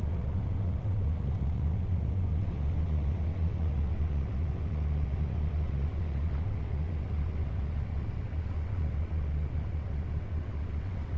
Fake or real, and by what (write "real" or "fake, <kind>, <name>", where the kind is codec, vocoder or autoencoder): fake, vocoder, WaveNeXt